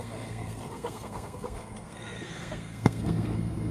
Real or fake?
fake